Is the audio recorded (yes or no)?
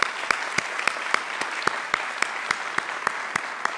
yes